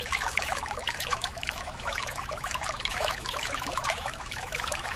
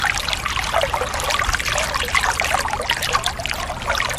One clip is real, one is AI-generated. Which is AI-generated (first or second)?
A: first